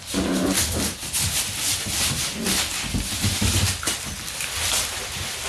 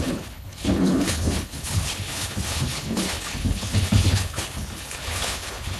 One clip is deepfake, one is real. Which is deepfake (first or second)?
second